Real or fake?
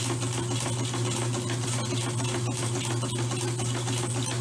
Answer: real